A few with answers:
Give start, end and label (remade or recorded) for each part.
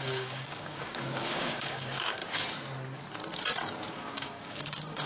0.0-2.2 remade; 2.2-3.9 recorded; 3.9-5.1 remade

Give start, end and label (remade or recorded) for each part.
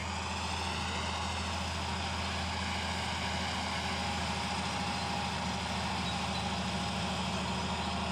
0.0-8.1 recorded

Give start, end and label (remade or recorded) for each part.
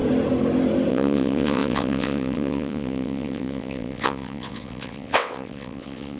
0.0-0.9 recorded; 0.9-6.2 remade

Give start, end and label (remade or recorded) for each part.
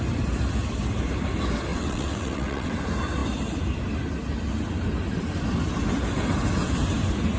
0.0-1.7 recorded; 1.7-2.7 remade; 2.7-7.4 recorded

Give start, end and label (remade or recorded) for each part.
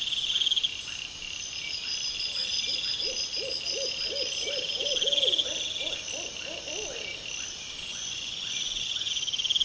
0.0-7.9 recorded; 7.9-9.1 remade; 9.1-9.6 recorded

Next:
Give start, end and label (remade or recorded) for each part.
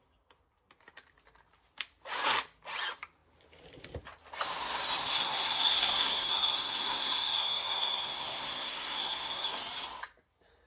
0.0-5.1 recorded; 5.1-9.6 remade; 9.6-10.7 recorded